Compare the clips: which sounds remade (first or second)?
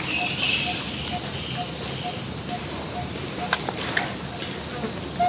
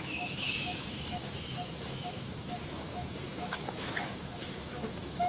second